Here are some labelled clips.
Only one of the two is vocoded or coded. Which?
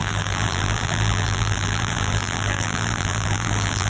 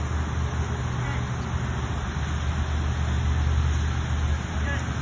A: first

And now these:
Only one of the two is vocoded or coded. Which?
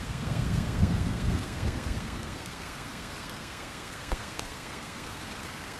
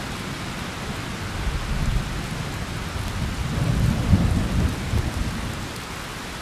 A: first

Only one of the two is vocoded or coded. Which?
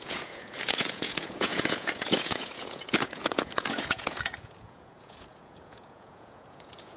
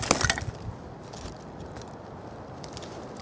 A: first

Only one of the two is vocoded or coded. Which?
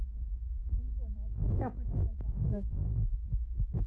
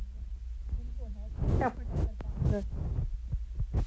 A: first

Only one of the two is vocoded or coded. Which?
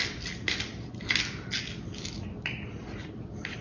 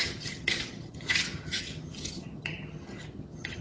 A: second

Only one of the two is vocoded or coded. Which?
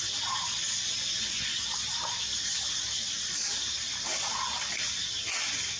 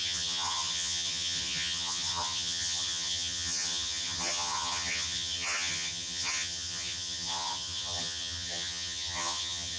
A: second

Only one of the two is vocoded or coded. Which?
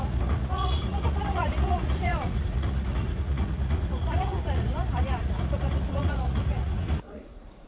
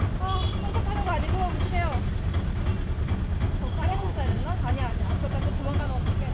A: first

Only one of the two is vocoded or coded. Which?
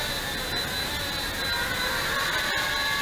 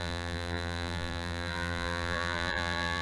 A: second